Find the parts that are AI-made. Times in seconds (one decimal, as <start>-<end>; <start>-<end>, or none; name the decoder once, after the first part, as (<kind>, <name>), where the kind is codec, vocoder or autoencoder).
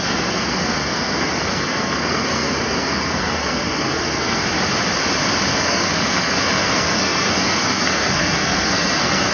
0.0-4.4 (codec, SNAC); 5.6-9.3